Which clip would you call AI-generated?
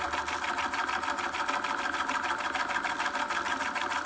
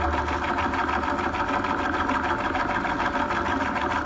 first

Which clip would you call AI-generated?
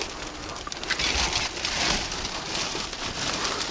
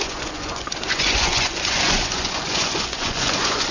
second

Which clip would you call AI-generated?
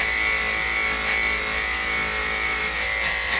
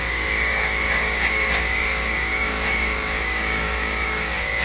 second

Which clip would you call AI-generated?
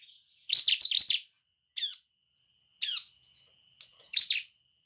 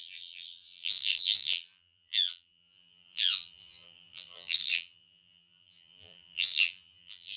second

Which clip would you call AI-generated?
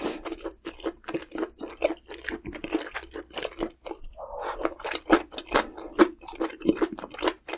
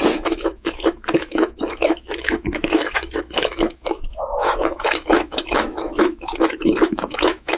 second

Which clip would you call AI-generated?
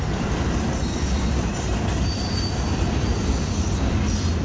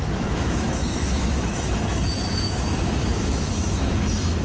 second